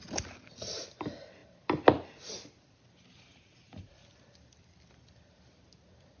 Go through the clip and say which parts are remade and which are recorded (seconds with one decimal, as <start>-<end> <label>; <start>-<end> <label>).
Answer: 0.0-3.3 recorded; 3.3-3.9 remade; 3.9-6.2 recorded